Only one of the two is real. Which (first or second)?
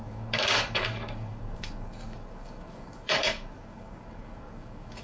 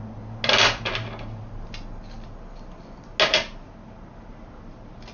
second